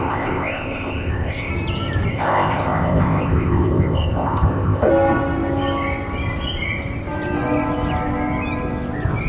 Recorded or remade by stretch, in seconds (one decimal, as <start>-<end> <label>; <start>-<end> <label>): 0.0-1.5 remade; 1.5-2.1 recorded; 2.1-4.9 remade; 4.9-9.3 recorded

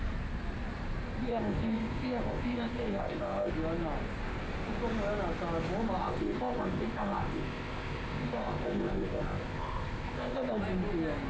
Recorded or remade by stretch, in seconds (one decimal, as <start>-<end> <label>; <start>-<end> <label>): 0.0-1.3 recorded; 1.3-3.5 remade; 3.5-6.0 recorded; 6.0-10.6 remade; 10.6-11.3 recorded

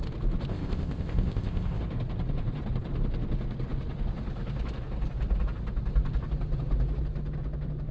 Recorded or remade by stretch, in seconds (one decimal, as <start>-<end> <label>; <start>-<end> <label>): 0.0-0.5 recorded; 0.5-1.8 remade; 1.8-7.9 recorded

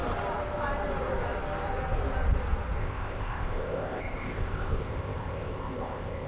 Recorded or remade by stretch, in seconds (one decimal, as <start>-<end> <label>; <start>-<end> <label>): 0.0-2.8 recorded; 2.8-6.3 remade

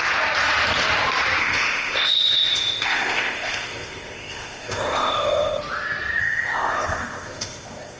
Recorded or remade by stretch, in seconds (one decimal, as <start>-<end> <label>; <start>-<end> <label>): 0.0-1.4 recorded; 1.4-5.6 remade; 5.6-6.2 recorded; 6.2-8.0 remade